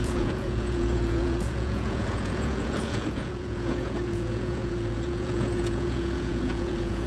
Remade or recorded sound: remade